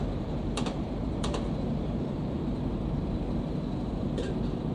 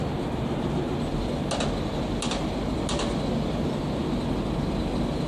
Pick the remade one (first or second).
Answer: first